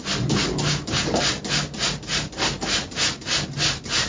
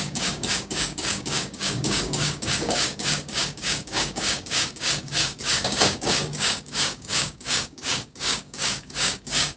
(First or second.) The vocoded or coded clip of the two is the second